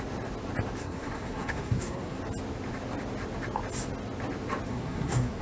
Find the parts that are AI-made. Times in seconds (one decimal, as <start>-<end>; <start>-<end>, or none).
0.8-2.2; 4.7-5.4